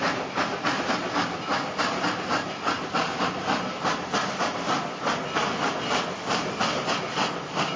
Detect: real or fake real